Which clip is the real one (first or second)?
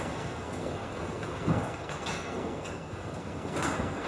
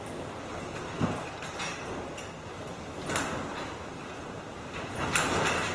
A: second